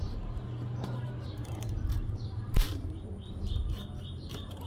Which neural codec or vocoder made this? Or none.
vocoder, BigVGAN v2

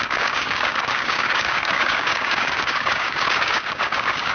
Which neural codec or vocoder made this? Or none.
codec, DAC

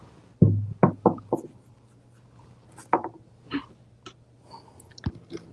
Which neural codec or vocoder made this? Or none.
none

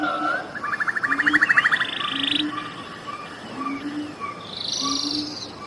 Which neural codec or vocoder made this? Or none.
none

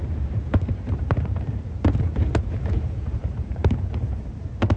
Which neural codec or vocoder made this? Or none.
vocoder, BigVGAN v2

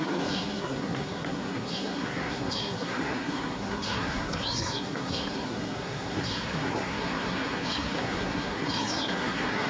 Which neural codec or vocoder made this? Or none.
codec, SNAC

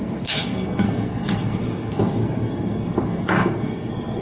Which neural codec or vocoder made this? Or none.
codec, SNAC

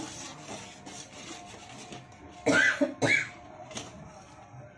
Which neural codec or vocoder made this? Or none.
none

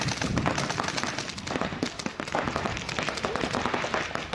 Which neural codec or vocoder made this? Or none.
none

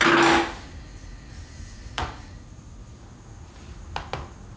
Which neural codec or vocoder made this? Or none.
none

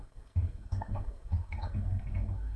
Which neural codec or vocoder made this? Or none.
codec, SNAC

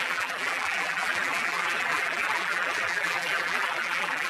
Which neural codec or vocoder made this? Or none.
vocoder, BigVGAN v2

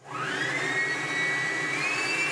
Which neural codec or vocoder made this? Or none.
none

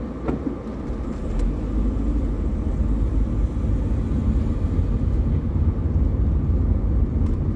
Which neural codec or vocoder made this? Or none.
none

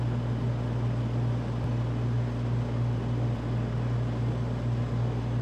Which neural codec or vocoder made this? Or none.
none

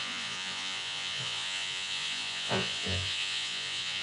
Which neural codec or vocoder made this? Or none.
vocoder, Vocos